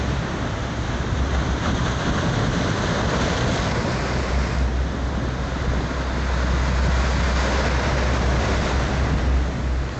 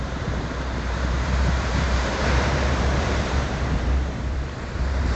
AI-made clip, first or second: second